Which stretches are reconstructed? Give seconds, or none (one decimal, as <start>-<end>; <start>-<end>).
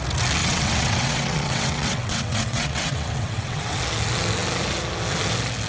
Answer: 0.4-3.8